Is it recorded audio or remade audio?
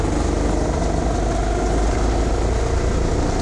recorded